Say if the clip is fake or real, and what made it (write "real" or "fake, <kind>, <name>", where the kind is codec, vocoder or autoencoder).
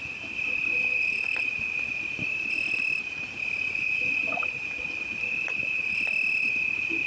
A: real